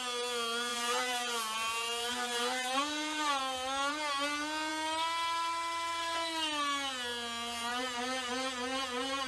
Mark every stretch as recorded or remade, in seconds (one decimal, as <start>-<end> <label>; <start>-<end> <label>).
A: 0.0-0.7 recorded; 0.7-3.4 remade; 3.4-7.7 recorded; 7.7-8.3 remade; 8.3-9.3 recorded